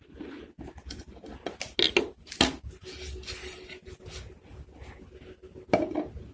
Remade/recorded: recorded